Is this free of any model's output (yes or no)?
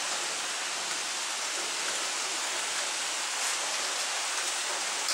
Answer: yes